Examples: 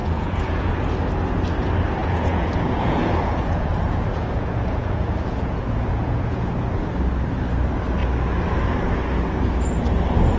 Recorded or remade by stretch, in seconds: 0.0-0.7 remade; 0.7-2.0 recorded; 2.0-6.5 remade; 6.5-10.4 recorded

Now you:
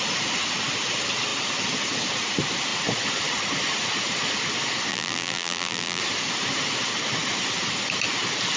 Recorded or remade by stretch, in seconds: 0.0-4.9 recorded; 4.9-6.0 remade; 6.0-8.6 recorded

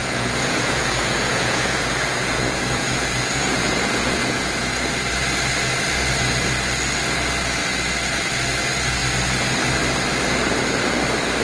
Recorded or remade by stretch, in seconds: 0.0-4.8 remade; 4.8-11.4 recorded

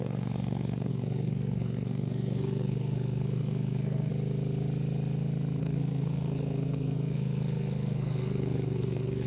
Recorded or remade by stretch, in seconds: 0.0-4.1 remade; 4.1-5.6 recorded; 5.6-9.3 remade

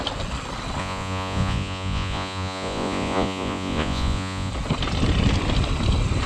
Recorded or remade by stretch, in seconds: 0.0-0.8 recorded; 0.8-4.5 remade; 4.5-6.3 recorded

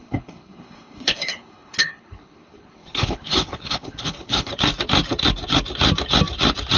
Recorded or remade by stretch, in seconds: 0.0-4.5 remade; 4.5-6.8 recorded

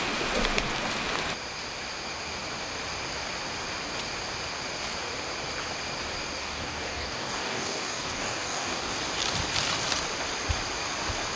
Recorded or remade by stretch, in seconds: 0.0-6.4 recorded; 6.4-8.9 remade; 8.9-11.4 recorded